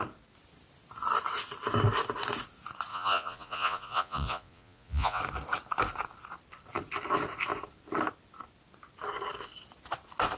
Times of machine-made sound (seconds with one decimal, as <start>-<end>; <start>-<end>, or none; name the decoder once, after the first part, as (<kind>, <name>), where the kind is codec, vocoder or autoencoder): 2.9-5.2 (vocoder, Vocos)

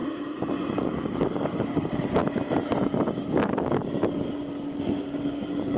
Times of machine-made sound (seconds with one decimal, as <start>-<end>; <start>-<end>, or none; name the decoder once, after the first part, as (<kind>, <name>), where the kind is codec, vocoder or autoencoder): 0.7-2.2 (codec, DAC); 3.3-3.8; 4.4-5.8

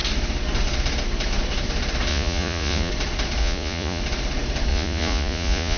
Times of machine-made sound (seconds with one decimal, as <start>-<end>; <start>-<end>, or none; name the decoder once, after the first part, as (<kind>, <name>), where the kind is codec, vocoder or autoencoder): 2.1-2.9 (vocoder, Vocos); 3.4-4.0; 4.7-5.8

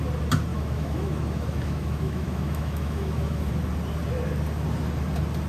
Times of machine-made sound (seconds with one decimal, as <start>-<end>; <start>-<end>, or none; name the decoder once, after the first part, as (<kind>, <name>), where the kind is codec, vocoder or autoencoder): 0.5-3.5 (autoencoder, DAC-VAE)

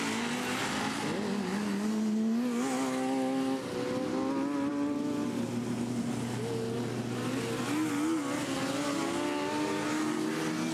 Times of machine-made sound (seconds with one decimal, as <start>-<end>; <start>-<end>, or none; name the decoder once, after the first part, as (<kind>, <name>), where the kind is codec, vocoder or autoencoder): none